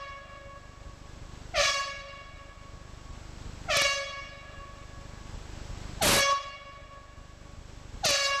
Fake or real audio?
real